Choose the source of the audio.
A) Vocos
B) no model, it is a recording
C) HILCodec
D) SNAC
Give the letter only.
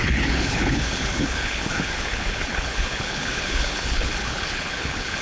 C